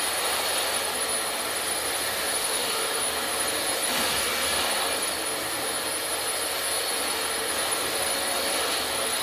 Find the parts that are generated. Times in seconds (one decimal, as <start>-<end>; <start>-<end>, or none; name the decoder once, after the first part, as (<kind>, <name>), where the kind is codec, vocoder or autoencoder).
2.4-3.0 (autoencoder, DAC-VAE)